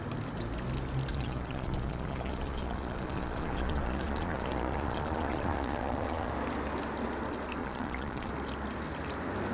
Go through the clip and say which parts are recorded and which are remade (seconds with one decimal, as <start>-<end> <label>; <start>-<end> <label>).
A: 0.0-1.1 recorded; 1.1-6.3 remade; 6.3-7.6 recorded; 7.6-8.3 remade; 8.3-9.5 recorded